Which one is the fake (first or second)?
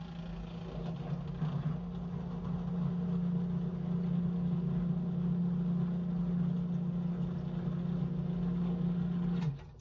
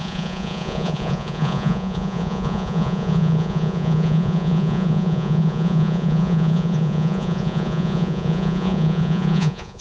second